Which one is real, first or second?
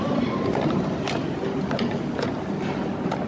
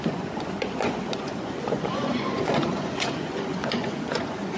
first